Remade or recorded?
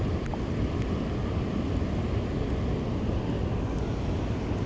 recorded